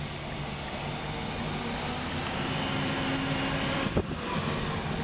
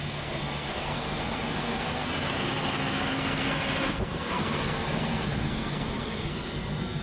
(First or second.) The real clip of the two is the first